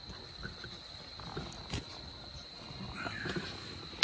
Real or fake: real